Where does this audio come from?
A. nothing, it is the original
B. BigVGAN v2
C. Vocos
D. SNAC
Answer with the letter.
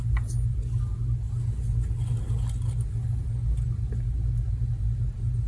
A